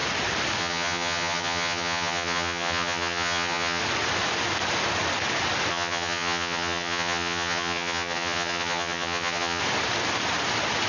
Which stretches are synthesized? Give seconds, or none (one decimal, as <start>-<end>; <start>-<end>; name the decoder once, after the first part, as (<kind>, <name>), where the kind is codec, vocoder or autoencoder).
0.6-3.8 (vocoder, HiFi-GAN); 5.7-9.6